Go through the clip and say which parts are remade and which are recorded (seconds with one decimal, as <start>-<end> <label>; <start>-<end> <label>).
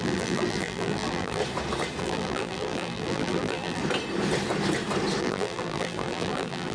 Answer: 0.0-1.4 remade; 1.4-2.0 recorded; 2.0-3.8 remade; 3.8-5.2 recorded; 5.2-6.7 remade